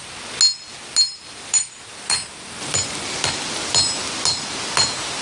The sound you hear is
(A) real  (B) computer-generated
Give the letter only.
A